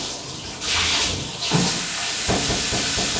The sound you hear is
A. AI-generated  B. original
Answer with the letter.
B